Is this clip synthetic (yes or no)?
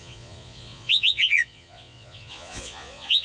yes